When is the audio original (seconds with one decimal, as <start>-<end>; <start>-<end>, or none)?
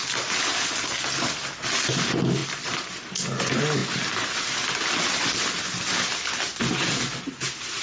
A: 0.0-7.8